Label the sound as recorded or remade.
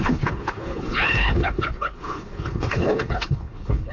remade